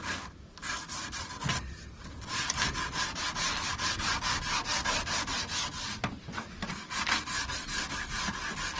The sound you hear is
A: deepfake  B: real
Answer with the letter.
B